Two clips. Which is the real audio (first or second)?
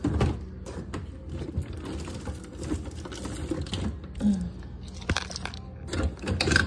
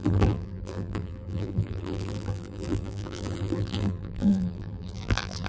first